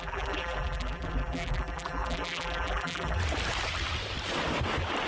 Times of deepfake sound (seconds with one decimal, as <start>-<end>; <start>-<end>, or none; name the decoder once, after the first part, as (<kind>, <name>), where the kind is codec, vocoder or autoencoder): 0.0-3.2 (vocoder, BigVGAN v2)